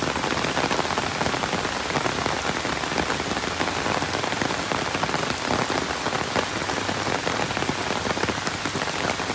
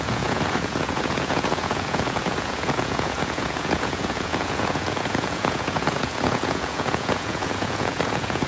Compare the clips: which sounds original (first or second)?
first